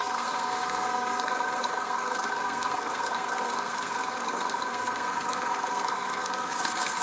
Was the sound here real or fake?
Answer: fake